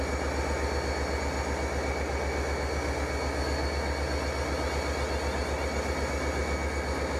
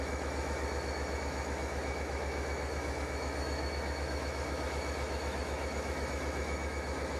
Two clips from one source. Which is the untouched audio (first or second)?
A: first